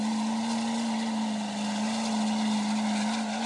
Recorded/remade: recorded